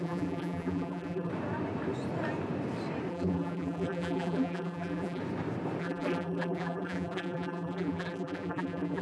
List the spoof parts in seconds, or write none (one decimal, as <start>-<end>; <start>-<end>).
0.0-1.3; 3.1-5.2; 5.8-9.0

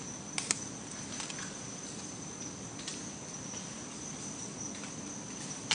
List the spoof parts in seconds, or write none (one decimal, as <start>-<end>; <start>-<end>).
none

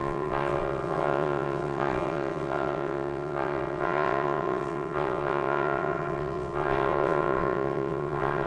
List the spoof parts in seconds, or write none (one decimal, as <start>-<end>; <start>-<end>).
0.0-8.5

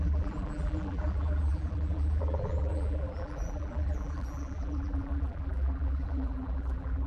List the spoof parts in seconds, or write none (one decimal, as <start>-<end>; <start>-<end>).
0.0-7.1

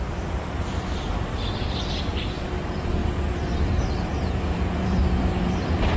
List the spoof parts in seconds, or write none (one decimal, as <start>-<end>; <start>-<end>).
0.0-1.4; 2.0-3.0; 3.7-6.0

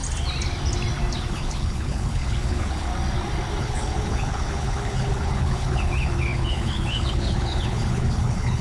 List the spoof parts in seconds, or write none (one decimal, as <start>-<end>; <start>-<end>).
1.3-2.9; 3.6-8.6

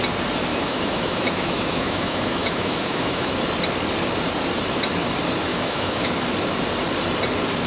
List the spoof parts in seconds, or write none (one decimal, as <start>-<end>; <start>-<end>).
0.5-3.3; 5.5-6.1